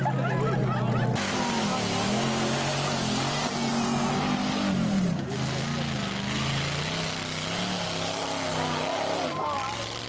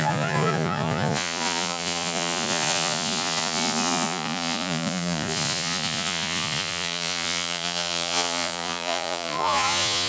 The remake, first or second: second